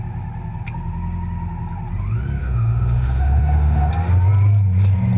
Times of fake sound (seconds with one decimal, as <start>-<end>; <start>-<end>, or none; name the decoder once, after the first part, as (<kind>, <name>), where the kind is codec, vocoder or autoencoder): 2.4-3.9 (autoencoder, DAC-VAE)